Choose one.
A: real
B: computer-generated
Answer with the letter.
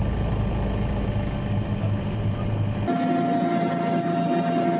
A